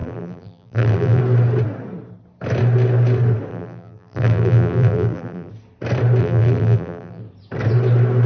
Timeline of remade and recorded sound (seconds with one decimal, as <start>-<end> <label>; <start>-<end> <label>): 0.0-1.2 remade; 1.2-3.5 recorded; 3.5-5.5 remade; 5.5-6.2 recorded; 6.2-7.2 remade; 7.2-8.3 recorded